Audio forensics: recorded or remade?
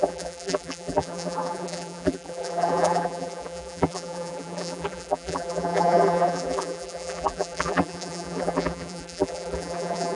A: remade